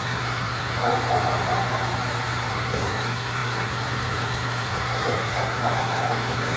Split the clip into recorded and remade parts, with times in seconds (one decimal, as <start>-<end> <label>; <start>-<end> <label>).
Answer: 0.0-0.9 remade; 0.9-2.5 recorded; 2.5-6.6 remade